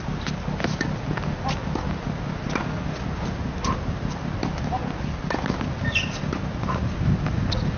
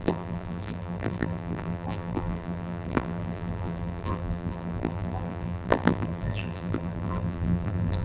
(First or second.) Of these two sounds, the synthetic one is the second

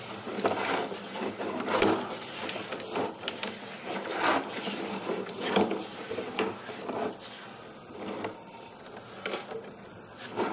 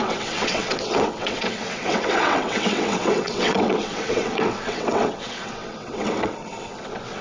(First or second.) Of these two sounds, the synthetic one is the second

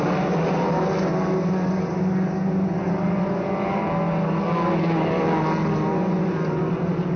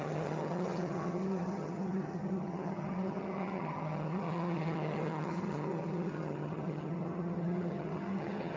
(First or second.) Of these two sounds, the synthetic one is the second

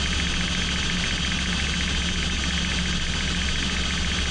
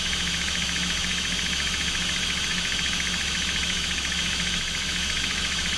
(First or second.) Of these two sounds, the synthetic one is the second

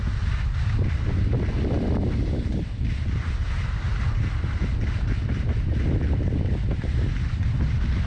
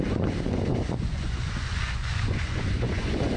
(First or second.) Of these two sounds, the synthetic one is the second